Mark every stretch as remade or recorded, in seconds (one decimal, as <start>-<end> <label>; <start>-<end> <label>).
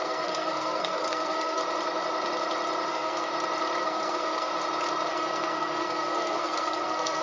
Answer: 0.0-1.6 remade; 1.6-2.9 recorded; 2.9-3.3 remade; 3.3-3.8 recorded; 3.8-4.5 remade; 4.5-5.1 recorded; 5.1-7.2 remade